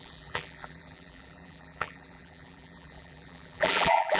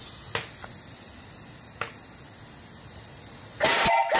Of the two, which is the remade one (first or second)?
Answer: first